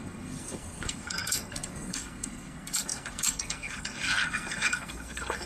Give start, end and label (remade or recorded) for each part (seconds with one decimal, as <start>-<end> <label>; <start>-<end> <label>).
0.0-5.5 remade